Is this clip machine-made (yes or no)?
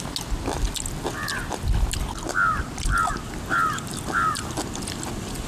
no